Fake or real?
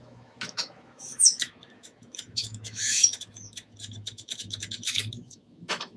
fake